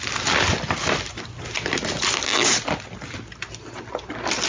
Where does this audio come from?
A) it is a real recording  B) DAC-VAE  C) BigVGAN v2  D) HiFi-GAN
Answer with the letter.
A